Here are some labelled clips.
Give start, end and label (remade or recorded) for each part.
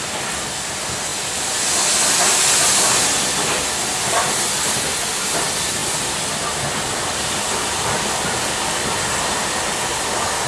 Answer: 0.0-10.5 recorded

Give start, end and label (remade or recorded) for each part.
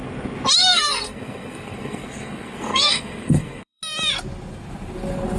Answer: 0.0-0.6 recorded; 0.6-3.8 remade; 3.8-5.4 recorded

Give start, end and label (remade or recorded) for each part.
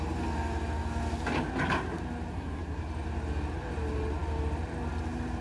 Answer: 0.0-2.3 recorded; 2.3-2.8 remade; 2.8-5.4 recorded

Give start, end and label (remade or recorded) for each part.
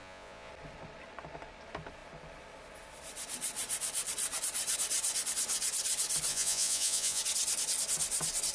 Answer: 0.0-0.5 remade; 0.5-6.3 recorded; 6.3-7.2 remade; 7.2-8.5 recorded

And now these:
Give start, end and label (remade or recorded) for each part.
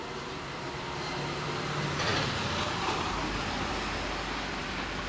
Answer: 0.0-5.1 recorded